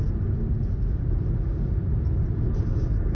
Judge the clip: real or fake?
real